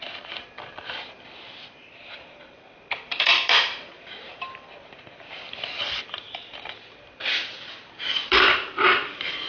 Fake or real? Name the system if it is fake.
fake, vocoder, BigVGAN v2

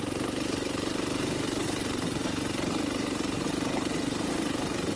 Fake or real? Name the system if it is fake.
fake, vocoder, BigVGAN v2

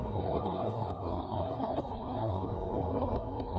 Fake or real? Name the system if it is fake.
fake, codec, SNAC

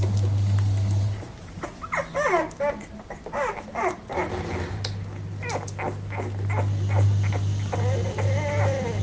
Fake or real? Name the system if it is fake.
real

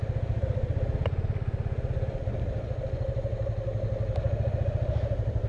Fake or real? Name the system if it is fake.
real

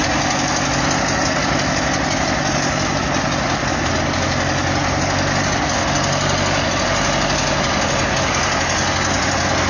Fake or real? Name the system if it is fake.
real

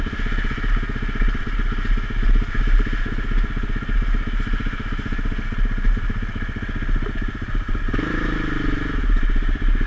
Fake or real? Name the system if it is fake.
real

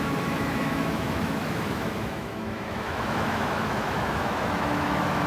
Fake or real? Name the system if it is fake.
fake, autoencoder, DAC-VAE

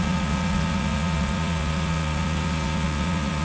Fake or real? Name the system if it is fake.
fake, vocoder, Vocos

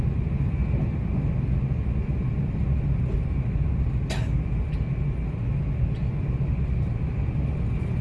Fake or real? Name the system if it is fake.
real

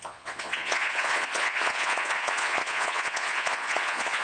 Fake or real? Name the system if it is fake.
fake, vocoder, Vocos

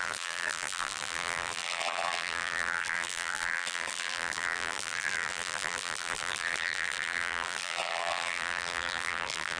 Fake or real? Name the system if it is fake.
fake, vocoder, BigVGAN v2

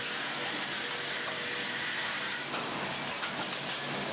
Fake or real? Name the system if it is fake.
real